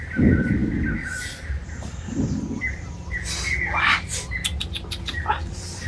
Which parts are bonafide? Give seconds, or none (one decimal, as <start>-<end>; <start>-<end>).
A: 0.0-5.9